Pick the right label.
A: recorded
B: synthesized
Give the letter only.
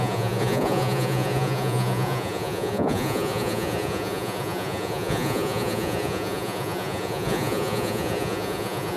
B